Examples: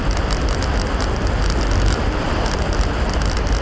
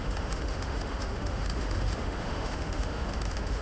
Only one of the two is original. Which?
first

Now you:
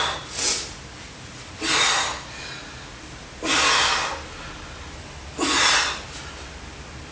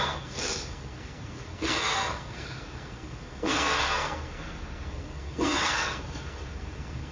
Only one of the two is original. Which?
first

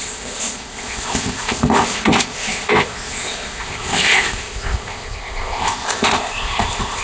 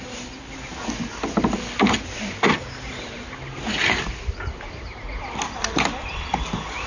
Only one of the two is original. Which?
second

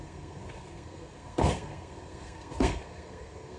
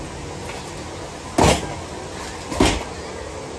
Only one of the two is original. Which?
second